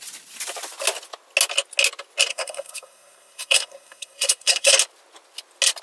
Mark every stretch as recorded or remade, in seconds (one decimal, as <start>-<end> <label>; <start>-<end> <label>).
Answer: 0.0-2.3 recorded; 2.3-4.7 remade; 4.7-5.8 recorded